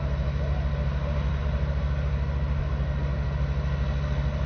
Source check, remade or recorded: recorded